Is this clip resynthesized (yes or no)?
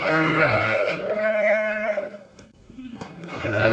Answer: yes